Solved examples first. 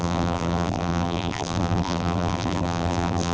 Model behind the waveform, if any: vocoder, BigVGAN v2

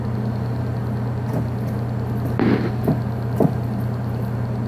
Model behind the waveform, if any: vocoder, BigVGAN v2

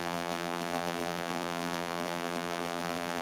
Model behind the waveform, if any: vocoder, BigVGAN v2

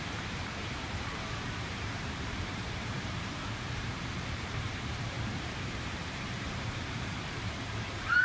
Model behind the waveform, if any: vocoder, BigVGAN v2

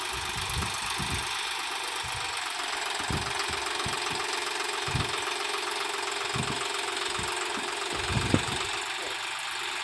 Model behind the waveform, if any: none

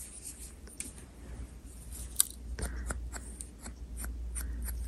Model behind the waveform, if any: none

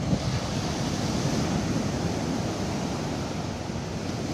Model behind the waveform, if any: none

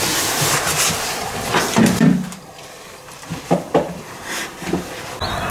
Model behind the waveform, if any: vocoder, BigVGAN v2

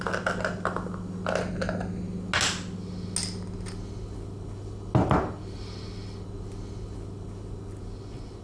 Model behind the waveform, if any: none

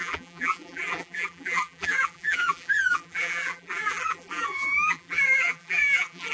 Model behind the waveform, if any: vocoder, BigVGAN v2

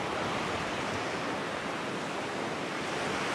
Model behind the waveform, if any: none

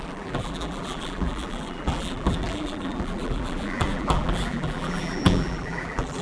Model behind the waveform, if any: vocoder, BigVGAN v2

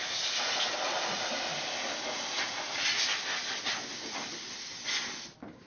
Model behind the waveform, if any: none